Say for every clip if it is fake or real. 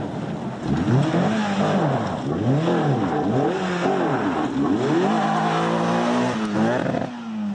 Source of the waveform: real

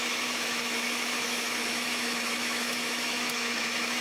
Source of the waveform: fake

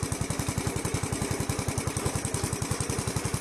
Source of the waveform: real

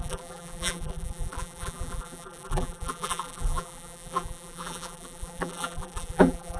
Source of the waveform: fake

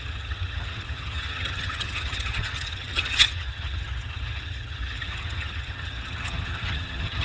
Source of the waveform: fake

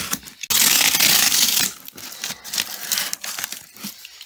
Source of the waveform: real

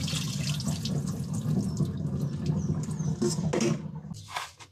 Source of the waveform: real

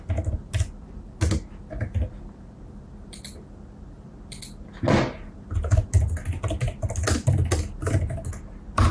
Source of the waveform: real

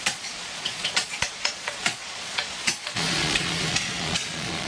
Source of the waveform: fake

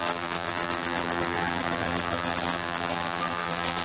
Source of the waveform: fake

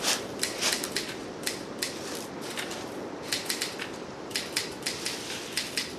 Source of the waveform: real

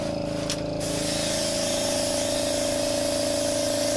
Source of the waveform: real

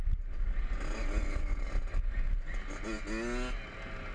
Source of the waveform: real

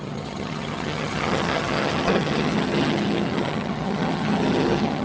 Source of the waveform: fake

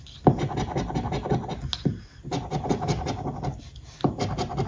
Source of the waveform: real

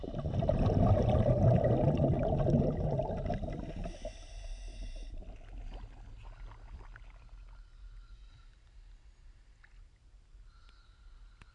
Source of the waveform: real